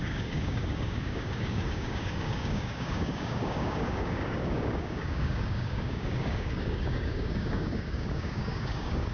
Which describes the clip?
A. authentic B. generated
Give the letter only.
B